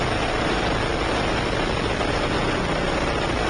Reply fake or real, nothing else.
real